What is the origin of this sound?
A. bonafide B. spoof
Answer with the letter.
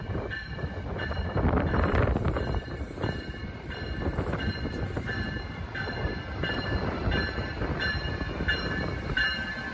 B